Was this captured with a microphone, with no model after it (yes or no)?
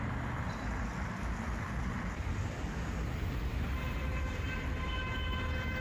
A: yes